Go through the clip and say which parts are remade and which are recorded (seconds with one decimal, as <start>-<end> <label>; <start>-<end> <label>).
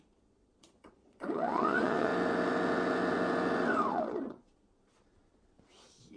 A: 0.0-2.1 remade; 2.1-3.9 recorded; 3.9-6.2 remade